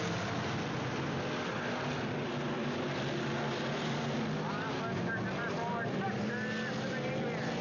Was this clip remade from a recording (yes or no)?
no